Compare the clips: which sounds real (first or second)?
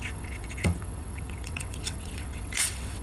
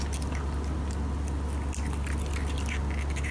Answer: second